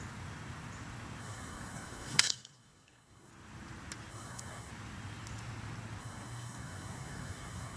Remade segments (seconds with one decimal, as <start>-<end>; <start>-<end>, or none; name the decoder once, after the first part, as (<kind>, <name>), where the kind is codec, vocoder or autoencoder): 1.2-3.3 (codec, SNAC); 4.1-4.7; 6.0-7.8